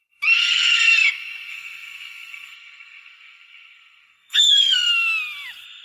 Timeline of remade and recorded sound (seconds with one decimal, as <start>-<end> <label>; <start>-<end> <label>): 0.0-0.4 recorded; 0.4-1.1 remade; 1.1-1.5 recorded; 1.5-4.9 remade; 4.9-5.8 recorded